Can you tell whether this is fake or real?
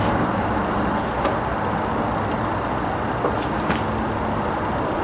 real